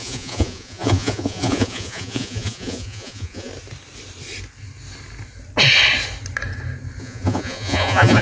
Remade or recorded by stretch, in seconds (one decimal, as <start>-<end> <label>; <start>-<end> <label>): 0.0-3.5 remade; 3.5-7.0 recorded; 7.0-8.2 remade